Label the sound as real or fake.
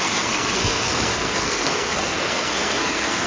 fake